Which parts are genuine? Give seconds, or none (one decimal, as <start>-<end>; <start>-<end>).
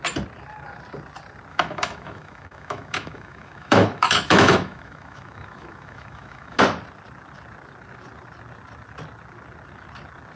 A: 0.0-1.5; 6.6-10.4